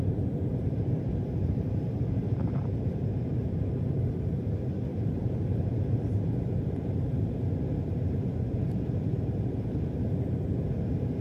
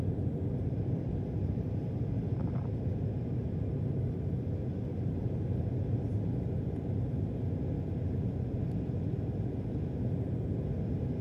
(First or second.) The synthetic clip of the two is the first